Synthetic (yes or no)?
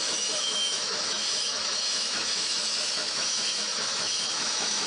yes